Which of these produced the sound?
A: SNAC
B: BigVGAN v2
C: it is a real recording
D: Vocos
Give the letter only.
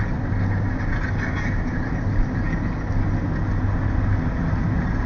C